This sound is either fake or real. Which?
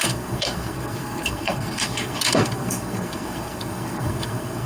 fake